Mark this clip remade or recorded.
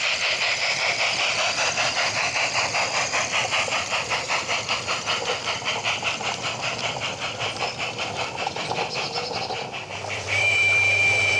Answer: remade